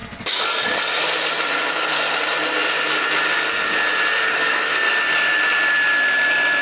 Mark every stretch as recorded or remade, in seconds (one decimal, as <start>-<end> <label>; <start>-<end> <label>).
0.0-4.3 recorded; 4.3-4.9 remade; 4.9-6.6 recorded